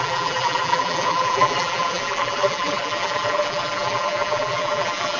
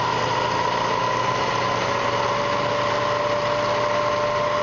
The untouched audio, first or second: second